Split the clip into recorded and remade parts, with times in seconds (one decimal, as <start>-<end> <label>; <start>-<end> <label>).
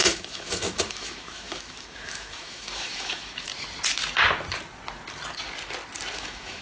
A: 0.0-3.5 remade; 3.5-6.1 recorded; 6.1-6.6 remade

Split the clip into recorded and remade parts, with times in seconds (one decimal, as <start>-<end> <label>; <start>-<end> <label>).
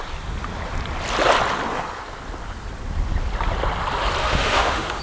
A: 0.0-4.2 recorded; 4.2-5.0 remade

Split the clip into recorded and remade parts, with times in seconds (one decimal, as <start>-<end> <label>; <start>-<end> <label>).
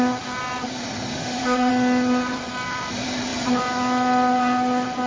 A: 0.0-1.1 recorded; 1.1-1.7 remade; 1.7-5.1 recorded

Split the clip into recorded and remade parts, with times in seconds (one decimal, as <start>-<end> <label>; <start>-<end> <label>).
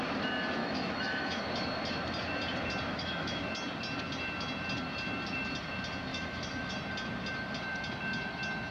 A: 0.0-0.6 recorded; 0.6-1.4 remade; 1.4-2.9 recorded; 2.9-3.5 remade; 3.5-6.1 recorded; 6.1-6.7 remade; 6.7-8.7 recorded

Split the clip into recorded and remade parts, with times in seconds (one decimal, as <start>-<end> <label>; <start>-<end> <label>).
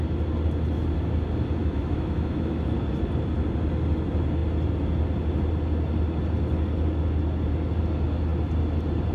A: 0.0-1.6 recorded; 1.6-2.5 remade; 2.5-9.1 recorded